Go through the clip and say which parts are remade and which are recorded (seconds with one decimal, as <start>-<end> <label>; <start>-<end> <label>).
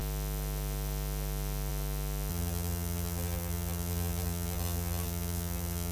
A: 0.0-2.3 recorded; 2.3-5.9 remade